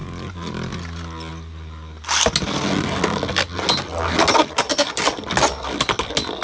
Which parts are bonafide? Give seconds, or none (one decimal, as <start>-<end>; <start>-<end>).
0.0-6.4